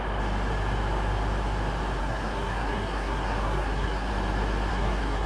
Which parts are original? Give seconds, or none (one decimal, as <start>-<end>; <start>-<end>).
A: 0.0-2.0; 4.1-4.7